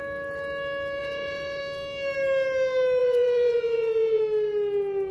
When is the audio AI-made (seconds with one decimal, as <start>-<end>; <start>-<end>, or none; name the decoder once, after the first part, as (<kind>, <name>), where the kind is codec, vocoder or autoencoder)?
1.0-1.6 (vocoder, Vocos); 3.0-4.2